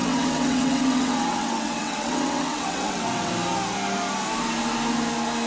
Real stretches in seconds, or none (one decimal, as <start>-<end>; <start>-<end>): 3.3-5.5